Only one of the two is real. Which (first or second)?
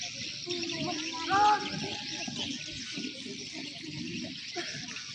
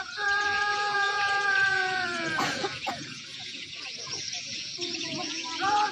first